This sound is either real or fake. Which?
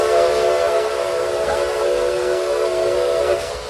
fake